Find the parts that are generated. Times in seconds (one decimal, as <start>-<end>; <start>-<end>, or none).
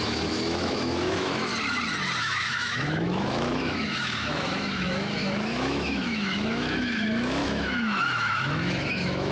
0.0-1.5; 2.2-9.3